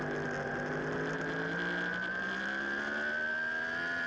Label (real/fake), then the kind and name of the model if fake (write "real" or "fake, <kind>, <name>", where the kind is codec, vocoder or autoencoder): real